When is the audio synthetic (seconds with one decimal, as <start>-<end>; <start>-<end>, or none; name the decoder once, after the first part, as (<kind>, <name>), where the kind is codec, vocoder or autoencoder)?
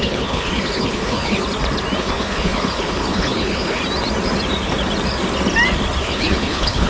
0.0-1.4 (codec, HILCodec); 2.0-3.8; 6.0-6.9